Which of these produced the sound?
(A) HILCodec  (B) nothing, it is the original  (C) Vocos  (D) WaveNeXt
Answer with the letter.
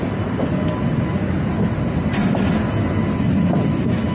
B